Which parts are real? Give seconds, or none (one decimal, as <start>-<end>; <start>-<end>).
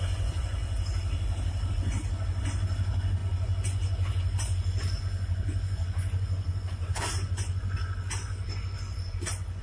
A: 0.6-1.7